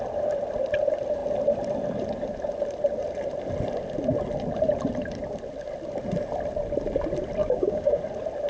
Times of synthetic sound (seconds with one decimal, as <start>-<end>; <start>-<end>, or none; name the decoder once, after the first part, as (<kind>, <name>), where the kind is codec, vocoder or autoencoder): 7.4-8.0 (codec, DAC)